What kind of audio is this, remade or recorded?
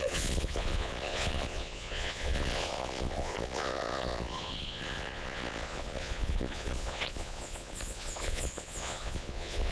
remade